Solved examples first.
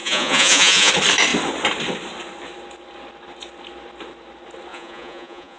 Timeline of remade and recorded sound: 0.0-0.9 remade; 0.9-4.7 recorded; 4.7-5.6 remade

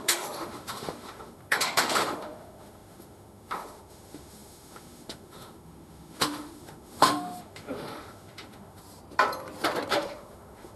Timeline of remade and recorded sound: 0.0-8.8 remade; 8.8-9.9 recorded; 9.9-10.8 remade

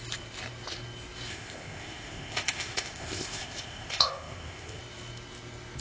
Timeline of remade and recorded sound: 0.0-1.3 recorded; 1.3-4.8 remade; 4.8-5.8 recorded

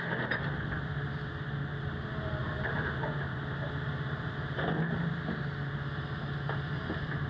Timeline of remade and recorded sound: 0.0-2.4 recorded; 2.4-3.4 remade; 3.4-7.3 recorded